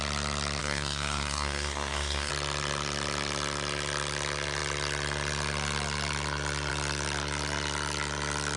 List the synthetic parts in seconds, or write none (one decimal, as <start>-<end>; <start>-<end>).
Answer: 0.6-2.3